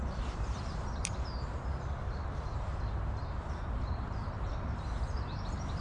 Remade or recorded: remade